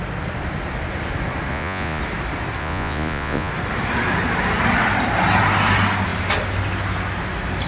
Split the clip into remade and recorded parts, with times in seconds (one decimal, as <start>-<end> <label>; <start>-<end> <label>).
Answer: 0.0-1.5 recorded; 1.5-2.0 remade; 2.0-2.6 recorded; 2.6-3.5 remade; 3.5-7.7 recorded